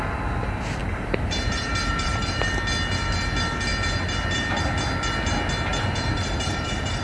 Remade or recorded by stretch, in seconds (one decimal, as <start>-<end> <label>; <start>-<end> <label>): 0.0-0.8 recorded; 0.8-2.4 remade; 2.4-5.7 recorded; 5.7-7.0 remade